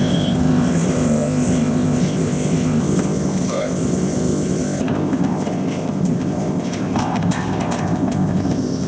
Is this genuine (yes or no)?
no